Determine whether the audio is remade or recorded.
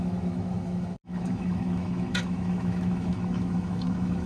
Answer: remade